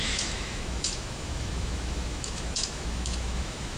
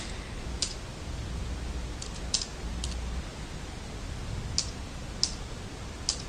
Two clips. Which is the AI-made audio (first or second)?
first